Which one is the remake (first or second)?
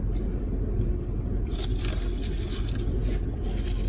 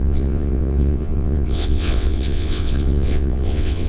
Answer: second